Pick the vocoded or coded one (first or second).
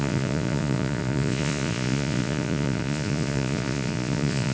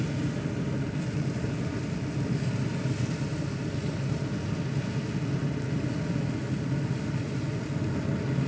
first